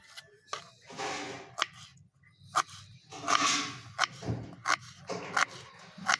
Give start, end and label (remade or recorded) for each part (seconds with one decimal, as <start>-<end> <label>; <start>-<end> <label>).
0.0-6.2 recorded